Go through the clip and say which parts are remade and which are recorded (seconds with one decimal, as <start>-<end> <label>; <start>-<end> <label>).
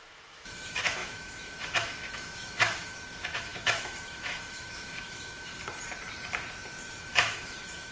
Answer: 0.0-5.5 remade; 5.5-7.0 recorded; 7.0-7.9 remade